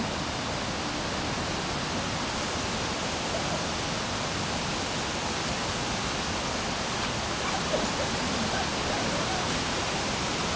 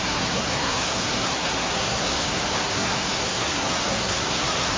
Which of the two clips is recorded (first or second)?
first